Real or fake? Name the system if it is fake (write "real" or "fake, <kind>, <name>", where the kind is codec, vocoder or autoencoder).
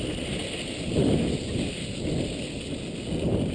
real